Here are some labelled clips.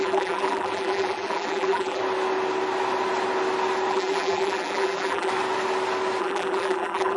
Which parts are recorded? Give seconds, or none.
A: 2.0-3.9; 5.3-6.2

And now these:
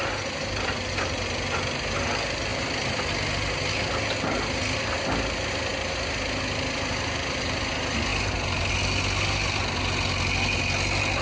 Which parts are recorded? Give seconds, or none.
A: 0.0-2.5; 3.0-5.7; 7.7-11.2

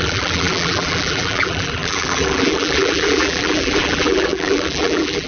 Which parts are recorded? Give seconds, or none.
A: none

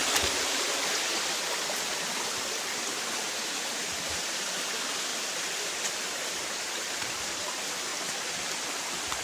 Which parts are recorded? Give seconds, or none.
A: 1.2-5.1; 7.2-9.2

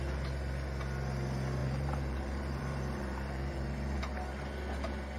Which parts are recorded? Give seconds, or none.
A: 0.0-1.6; 4.0-5.2

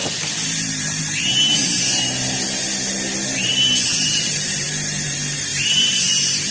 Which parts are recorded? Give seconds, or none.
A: 1.0-3.9; 4.7-5.5

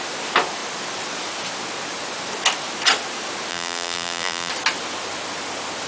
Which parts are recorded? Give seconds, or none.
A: 0.0-3.5; 4.5-5.9

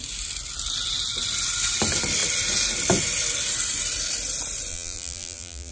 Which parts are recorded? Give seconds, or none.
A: 0.0-4.7